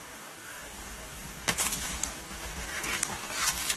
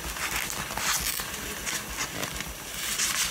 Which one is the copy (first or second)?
first